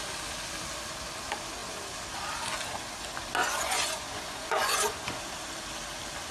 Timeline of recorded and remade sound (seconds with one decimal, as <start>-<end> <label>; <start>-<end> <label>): 0.0-3.4 recorded; 3.4-5.2 remade; 5.2-6.3 recorded